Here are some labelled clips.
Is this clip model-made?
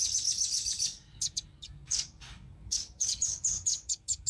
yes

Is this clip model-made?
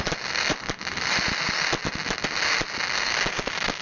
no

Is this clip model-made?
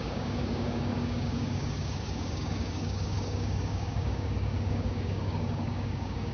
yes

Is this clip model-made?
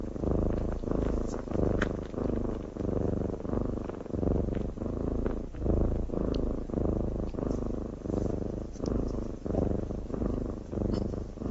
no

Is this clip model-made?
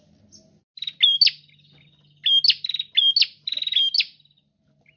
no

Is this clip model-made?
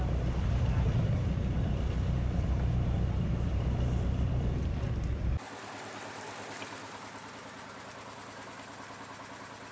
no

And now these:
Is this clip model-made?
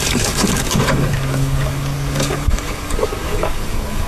yes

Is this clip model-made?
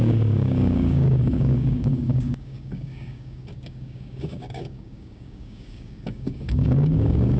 yes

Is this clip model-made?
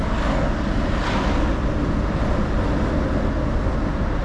no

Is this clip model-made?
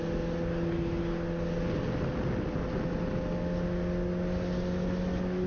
no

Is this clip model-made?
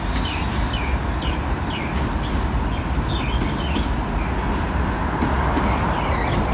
no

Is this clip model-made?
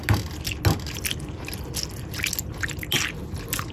no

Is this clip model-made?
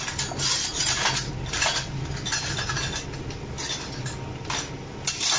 no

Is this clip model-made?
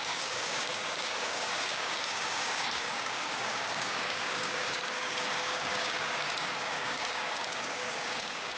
yes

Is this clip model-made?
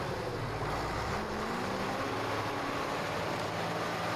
no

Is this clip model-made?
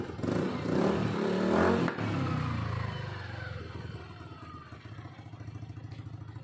no